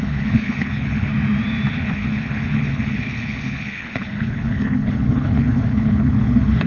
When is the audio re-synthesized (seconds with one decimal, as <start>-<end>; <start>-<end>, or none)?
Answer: 0.0-1.1; 1.7-6.7